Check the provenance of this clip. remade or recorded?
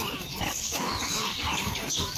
remade